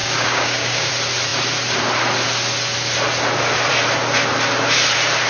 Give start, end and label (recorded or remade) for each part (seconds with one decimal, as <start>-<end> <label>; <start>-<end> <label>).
0.0-0.9 remade; 0.9-5.3 recorded